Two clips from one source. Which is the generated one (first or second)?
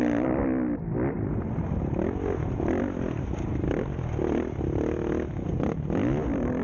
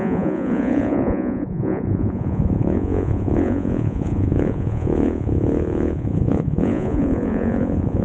second